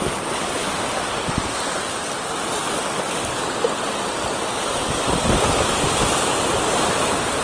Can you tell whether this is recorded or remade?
recorded